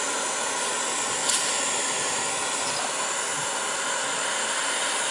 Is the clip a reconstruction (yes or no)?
yes